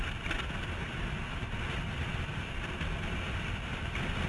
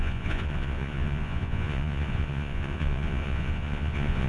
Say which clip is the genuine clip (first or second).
first